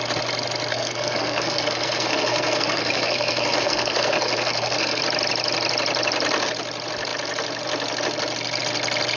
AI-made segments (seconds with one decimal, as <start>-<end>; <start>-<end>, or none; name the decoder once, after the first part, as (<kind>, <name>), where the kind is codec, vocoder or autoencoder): 0.7-5.0 (codec, SNAC)